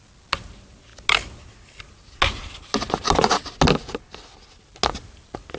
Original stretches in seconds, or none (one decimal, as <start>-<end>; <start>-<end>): 0.0-5.6